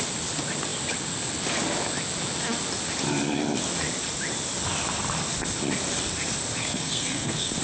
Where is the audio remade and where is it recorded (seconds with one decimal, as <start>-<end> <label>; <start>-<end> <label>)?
0.0-6.6 recorded; 6.6-7.6 remade